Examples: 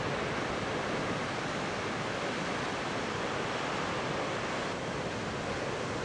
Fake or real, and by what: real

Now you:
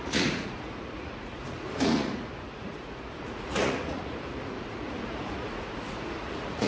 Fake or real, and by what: fake, vocoder, Vocos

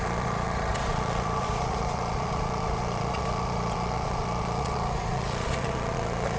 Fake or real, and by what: fake, vocoder, Vocos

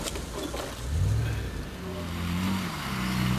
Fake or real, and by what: real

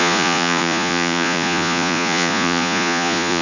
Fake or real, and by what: fake, vocoder, Vocos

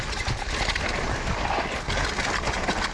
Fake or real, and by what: real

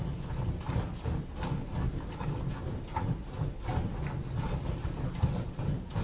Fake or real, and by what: real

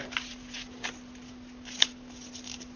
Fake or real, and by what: real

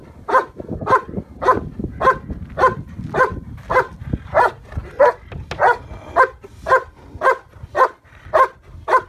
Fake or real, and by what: real